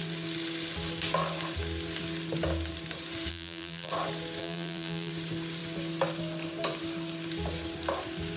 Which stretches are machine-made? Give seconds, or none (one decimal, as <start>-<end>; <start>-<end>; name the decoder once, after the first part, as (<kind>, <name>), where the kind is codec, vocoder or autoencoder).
3.3-3.9 (vocoder, BigVGAN v2); 4.4-5.1